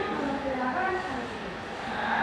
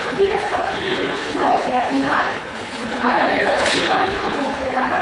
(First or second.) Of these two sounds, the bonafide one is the first